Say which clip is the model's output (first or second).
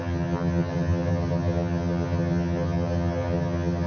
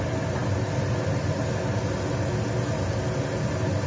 first